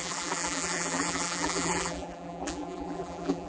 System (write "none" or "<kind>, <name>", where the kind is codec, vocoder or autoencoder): vocoder, BigVGAN v2